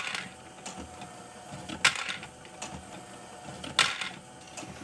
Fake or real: real